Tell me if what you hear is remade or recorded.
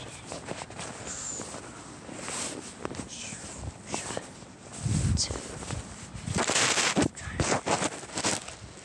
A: recorded